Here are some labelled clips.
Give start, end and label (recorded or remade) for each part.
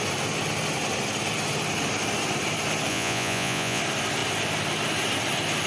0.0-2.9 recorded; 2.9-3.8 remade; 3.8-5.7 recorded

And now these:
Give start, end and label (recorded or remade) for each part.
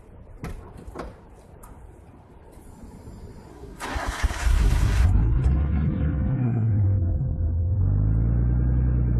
0.0-3.5 recorded; 3.5-7.8 remade; 7.8-9.2 recorded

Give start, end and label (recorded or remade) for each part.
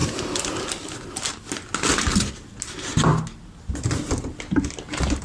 0.0-5.2 recorded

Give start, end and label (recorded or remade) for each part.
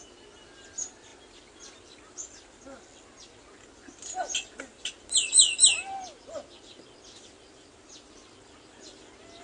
0.0-9.4 recorded